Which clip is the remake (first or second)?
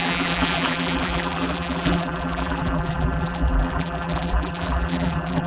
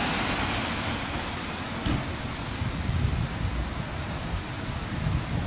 first